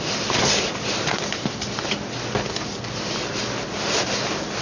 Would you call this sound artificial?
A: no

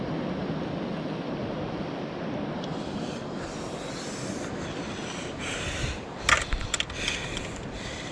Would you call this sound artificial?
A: no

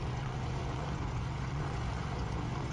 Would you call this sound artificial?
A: yes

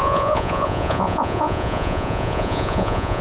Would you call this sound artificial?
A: yes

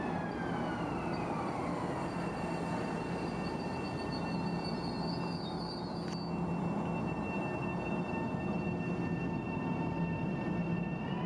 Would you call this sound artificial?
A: no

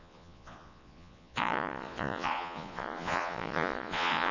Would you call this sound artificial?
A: yes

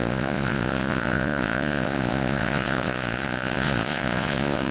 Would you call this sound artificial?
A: yes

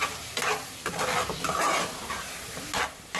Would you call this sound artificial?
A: no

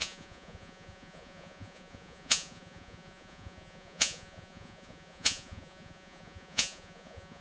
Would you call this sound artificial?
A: yes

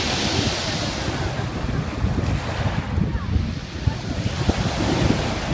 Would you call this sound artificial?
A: no